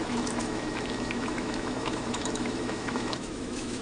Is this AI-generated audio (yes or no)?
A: yes